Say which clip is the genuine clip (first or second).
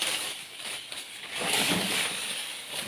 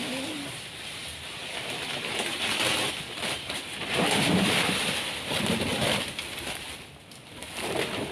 second